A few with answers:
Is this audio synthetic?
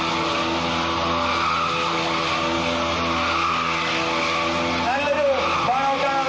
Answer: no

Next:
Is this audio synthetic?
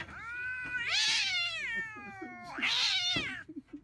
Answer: no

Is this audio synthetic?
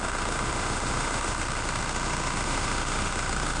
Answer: yes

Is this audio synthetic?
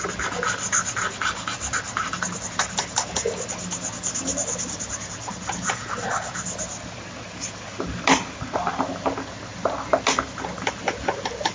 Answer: no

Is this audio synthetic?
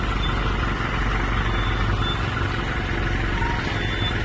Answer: no